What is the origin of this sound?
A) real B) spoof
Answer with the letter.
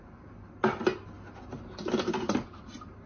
A